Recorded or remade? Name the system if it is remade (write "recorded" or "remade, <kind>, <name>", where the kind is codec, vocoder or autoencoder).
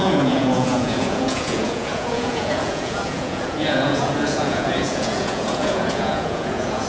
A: remade, vocoder, Vocos